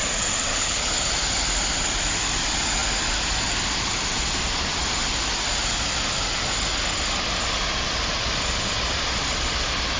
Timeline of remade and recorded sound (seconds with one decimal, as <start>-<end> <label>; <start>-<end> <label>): 0.0-0.5 recorded; 0.5-1.0 remade; 1.0-10.0 recorded